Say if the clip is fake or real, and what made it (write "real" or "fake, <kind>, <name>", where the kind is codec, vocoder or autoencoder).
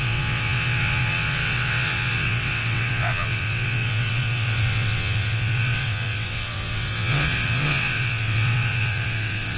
fake, vocoder, WaveNeXt